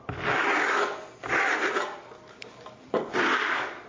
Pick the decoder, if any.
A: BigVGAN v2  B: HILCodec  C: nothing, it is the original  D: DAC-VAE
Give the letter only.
C